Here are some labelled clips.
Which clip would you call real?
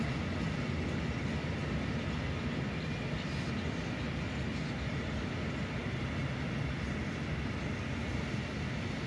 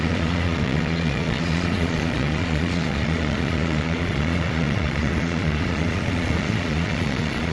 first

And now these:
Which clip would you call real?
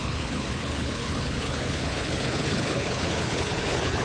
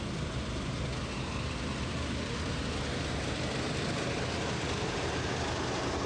second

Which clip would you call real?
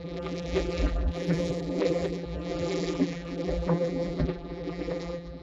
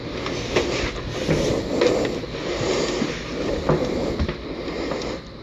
second